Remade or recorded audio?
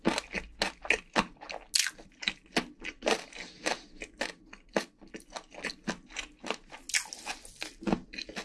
recorded